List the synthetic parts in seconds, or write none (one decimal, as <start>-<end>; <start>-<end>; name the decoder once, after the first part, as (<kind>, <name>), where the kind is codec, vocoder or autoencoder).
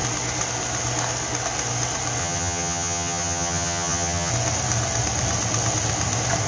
2.2-4.3 (vocoder, HiFi-GAN)